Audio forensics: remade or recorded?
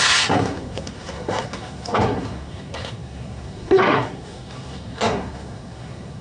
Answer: remade